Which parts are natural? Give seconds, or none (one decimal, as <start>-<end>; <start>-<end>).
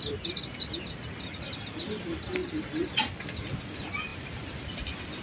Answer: 0.0-5.2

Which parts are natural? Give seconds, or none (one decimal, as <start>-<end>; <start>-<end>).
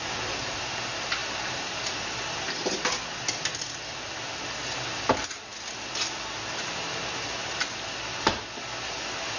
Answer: 0.0-9.4